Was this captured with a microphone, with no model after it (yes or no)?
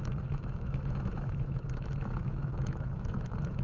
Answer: no